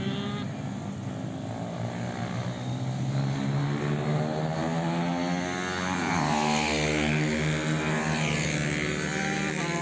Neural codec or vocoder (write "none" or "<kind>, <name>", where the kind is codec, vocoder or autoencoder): none